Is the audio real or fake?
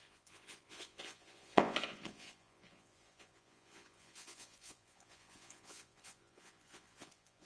fake